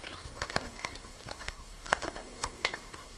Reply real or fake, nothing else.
fake